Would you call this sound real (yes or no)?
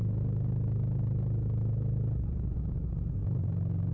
yes